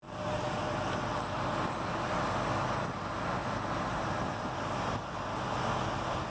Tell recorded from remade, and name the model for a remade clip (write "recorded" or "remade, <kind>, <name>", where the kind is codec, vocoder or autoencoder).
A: recorded